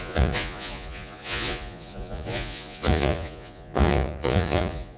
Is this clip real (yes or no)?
no